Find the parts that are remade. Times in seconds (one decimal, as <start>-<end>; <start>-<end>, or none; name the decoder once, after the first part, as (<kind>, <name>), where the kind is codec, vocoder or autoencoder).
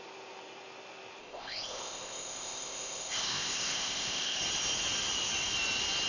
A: 1.2-4.4 (codec, ZipCodec)